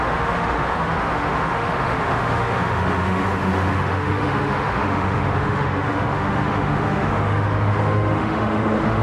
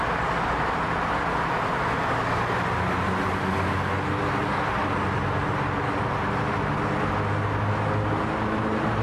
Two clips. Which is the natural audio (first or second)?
second